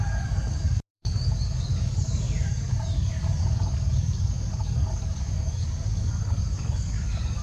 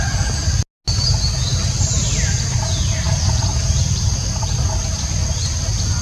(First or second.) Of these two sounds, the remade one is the first